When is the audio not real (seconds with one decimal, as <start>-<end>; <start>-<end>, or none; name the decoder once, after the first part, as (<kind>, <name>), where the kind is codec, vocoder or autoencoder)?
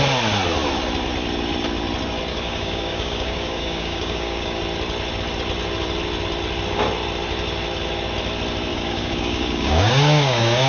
2.3-4.6 (codec, DAC); 8.7-10.7